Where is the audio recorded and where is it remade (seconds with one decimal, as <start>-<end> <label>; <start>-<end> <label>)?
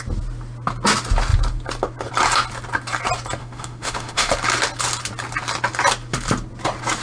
0.0-3.4 recorded; 3.4-4.3 remade; 4.3-7.0 recorded